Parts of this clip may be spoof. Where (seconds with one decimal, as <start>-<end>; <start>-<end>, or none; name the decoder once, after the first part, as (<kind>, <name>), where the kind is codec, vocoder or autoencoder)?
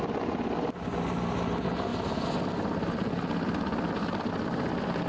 none